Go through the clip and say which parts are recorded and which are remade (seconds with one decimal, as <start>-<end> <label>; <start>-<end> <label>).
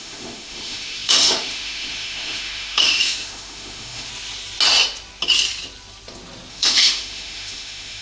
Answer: 0.0-4.1 remade; 4.1-6.5 recorded; 6.5-8.0 remade